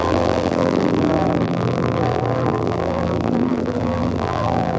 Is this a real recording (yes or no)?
no